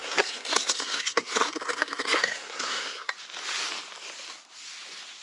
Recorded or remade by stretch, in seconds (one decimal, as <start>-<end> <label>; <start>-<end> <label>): 0.0-3.1 remade; 3.1-5.2 recorded